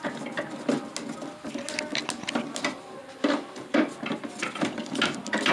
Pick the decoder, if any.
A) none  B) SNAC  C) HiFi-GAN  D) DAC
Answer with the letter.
A